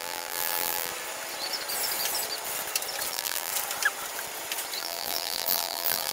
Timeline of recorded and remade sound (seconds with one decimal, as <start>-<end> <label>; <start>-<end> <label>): 0.0-0.9 remade; 0.9-3.1 recorded; 3.1-3.5 remade; 3.5-4.8 recorded; 4.8-6.1 remade